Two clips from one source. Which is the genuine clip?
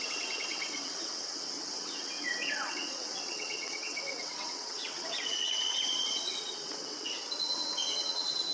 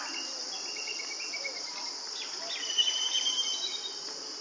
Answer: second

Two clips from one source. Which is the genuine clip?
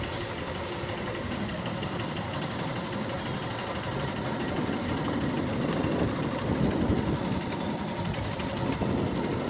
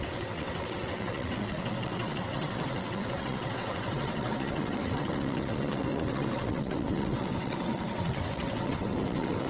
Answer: first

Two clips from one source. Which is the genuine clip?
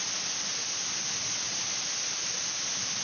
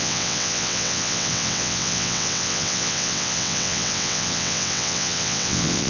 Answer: first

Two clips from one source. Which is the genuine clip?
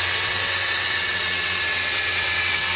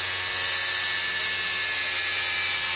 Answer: second